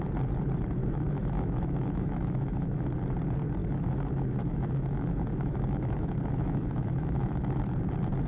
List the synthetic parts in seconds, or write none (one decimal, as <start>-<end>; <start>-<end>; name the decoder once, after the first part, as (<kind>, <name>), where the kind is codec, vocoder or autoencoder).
0.8-2.9 (autoencoder, DAC-VAE); 3.6-7.6